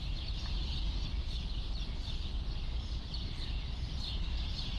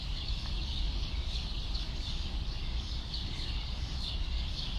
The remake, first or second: second